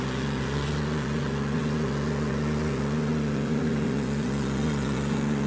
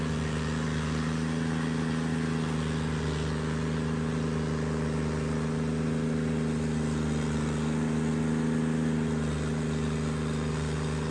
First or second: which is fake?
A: first